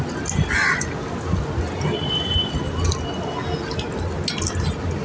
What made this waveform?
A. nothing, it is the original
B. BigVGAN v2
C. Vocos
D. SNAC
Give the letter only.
A